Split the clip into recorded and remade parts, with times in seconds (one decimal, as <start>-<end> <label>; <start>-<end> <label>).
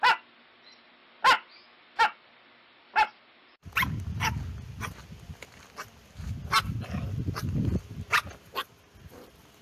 0.0-9.6 recorded